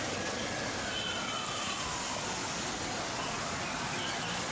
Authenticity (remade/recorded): recorded